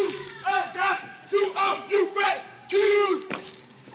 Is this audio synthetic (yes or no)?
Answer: yes